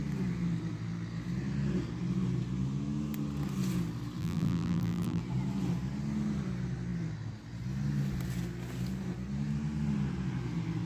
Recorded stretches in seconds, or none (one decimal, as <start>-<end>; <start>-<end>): 0.0-4.2; 5.2-10.9